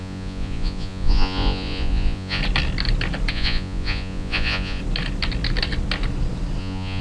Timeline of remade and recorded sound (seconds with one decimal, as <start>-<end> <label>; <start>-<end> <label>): 0.0-2.4 remade; 2.4-3.3 recorded; 3.3-4.8 remade; 4.8-6.6 recorded; 6.6-7.0 remade